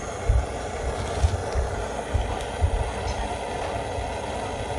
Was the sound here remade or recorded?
recorded